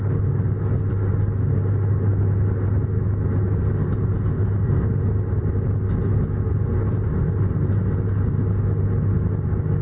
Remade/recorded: recorded